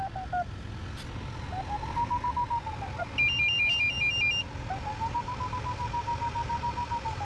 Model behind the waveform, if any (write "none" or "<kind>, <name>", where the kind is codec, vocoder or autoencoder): none